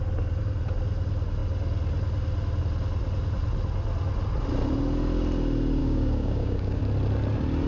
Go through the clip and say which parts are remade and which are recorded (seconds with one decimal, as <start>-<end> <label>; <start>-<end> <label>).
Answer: 0.0-5.8 recorded; 5.8-6.8 remade; 6.8-7.7 recorded